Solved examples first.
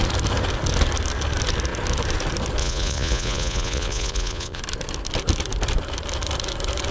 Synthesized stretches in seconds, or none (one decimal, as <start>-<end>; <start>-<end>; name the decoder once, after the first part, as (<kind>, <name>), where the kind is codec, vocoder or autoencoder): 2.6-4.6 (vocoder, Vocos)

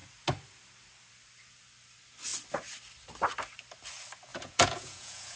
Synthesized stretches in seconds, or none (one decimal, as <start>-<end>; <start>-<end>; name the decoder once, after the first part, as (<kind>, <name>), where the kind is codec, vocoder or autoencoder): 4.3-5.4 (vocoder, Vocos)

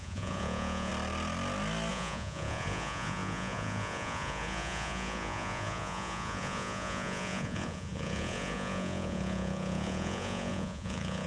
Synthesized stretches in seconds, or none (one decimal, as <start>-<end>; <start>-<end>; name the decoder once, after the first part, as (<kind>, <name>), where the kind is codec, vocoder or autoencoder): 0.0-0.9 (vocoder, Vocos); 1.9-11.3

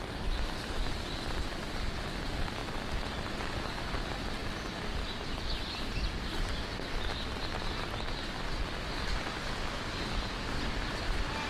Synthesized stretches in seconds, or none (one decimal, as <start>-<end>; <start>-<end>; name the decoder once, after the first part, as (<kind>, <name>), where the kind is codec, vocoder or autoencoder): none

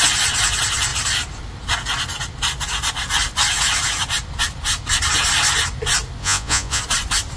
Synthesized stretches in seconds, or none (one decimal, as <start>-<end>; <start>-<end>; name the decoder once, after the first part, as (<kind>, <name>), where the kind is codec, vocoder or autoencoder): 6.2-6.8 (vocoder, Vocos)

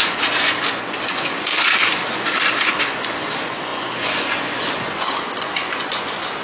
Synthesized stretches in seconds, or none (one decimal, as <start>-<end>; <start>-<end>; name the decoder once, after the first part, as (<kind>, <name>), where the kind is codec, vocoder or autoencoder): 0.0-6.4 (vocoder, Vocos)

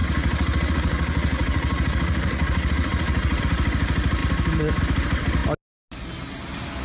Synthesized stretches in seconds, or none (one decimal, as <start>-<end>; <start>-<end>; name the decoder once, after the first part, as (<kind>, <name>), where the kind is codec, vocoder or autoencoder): 0.0-3.4 (vocoder, Vocos)